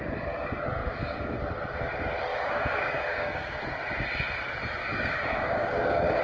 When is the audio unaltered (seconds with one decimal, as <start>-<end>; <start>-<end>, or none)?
0.0-0.8; 1.4-2.3; 3.6-4.8